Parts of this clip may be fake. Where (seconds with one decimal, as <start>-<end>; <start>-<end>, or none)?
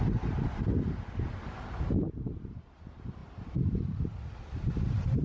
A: 3.2-3.8